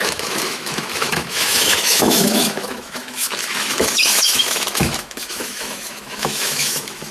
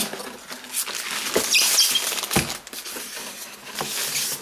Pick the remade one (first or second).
first